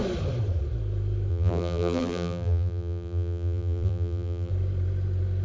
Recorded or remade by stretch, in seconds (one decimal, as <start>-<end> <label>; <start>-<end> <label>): 0.0-1.3 recorded; 1.3-4.5 remade; 4.5-5.4 recorded